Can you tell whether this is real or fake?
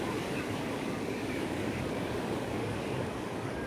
fake